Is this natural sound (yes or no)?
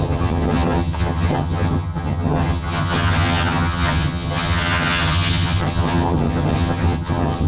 no